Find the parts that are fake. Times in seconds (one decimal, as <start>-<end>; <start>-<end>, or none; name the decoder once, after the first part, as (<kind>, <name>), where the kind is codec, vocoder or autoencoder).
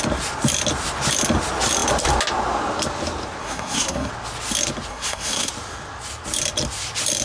3.4-4.1 (codec, SNAC); 4.9-5.5